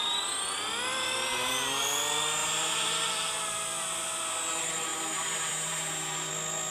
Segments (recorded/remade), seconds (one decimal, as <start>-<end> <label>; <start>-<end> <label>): 0.0-0.9 recorded; 0.9-1.5 remade; 1.5-2.4 recorded; 2.4-3.1 remade; 3.1-4.9 recorded; 4.9-6.3 remade; 6.3-6.7 recorded